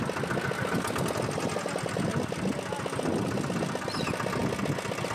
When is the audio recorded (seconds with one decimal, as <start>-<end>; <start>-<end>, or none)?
0.0-5.1